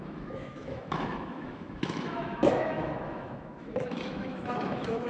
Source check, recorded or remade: remade